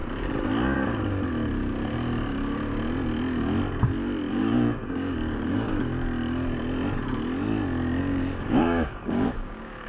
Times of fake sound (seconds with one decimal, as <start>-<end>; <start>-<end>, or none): 4.3-5.9; 8.0-9.9